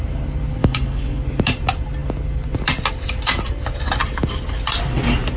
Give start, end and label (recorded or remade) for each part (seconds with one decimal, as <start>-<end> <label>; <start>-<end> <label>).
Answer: 0.0-0.6 recorded; 0.6-1.2 remade; 1.2-5.4 recorded